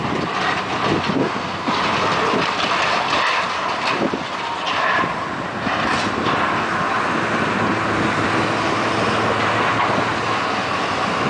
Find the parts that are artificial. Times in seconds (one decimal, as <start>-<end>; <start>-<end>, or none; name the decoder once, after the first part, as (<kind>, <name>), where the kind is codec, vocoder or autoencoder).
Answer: 1.2-1.7 (codec, SNAC)